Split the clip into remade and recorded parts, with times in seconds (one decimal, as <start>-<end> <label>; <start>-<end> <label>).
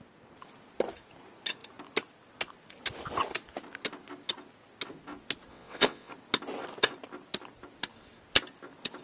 0.0-5.5 recorded; 5.5-6.1 remade; 6.1-9.0 recorded